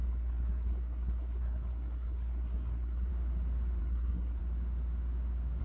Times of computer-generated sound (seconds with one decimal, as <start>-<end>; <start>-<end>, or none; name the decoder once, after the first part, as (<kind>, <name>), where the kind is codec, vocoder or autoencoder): 0.0-3.1 (codec, SNAC); 3.8-4.4